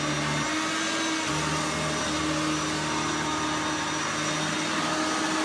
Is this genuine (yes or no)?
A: yes